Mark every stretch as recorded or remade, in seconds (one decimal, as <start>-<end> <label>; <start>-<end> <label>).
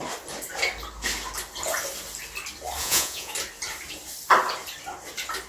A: 0.0-2.8 recorded; 2.8-3.3 remade; 3.3-5.5 recorded